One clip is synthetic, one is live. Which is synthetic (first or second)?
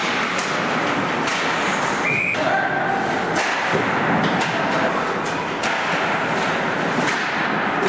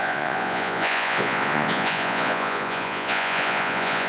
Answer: second